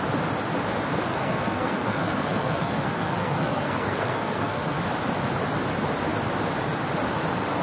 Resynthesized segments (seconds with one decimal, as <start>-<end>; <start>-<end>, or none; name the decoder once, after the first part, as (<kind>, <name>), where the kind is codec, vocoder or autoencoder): 1.1-4.8 (codec, SNAC)